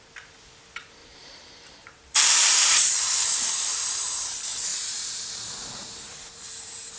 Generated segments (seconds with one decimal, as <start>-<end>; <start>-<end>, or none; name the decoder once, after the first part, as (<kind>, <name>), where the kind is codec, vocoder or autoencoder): 1.0-3.3 (vocoder, BigVGAN v2); 4.7-7.0